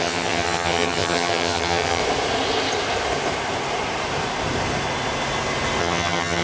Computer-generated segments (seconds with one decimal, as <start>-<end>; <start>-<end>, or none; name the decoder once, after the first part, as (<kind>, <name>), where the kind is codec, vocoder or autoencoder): 0.0-2.0 (vocoder, HiFi-GAN); 5.8-6.4